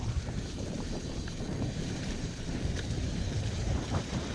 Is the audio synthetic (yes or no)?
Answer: yes